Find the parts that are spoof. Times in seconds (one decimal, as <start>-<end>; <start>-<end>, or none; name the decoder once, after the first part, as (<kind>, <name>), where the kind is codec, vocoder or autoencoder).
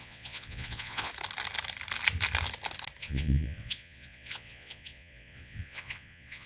0.0-1.1 (vocoder, Vocos); 3.0-6.5